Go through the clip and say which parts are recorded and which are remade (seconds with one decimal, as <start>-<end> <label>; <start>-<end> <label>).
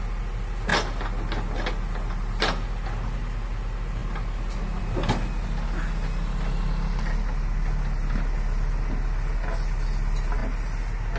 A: 0.0-11.2 recorded